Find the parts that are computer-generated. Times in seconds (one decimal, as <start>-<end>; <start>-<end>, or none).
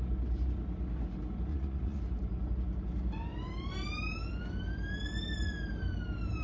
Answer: 1.5-2.0